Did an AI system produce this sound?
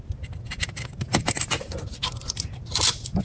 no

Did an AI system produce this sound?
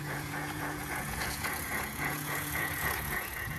yes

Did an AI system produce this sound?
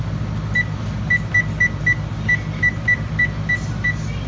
no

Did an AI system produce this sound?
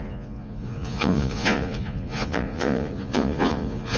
yes